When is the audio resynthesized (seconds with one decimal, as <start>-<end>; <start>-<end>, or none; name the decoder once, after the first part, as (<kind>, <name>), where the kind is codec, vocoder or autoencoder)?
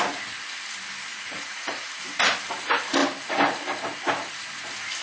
1.1-1.9 (vocoder, Vocos)